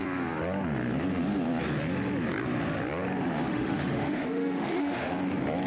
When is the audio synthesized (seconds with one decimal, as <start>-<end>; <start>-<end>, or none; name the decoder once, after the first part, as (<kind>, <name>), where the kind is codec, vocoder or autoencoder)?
3.5-5.1 (autoencoder, DAC-VAE)